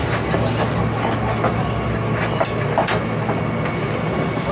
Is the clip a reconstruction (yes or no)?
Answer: no